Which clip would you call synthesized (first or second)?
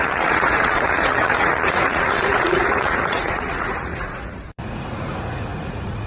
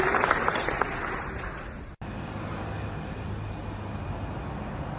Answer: first